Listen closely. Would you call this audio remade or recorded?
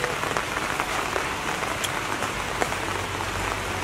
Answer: recorded